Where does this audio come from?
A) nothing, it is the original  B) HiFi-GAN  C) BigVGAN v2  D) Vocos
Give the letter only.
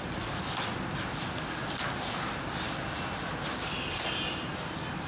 A